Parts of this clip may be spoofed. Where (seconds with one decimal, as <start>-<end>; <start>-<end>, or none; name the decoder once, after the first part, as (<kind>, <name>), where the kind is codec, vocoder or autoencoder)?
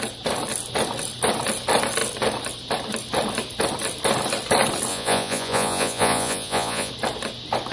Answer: 4.9-6.9 (vocoder, Vocos)